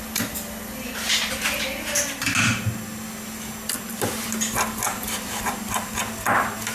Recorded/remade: recorded